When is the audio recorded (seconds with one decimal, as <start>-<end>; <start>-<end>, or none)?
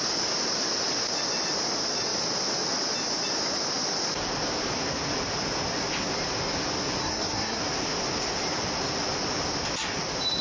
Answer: 0.0-7.0; 7.6-10.4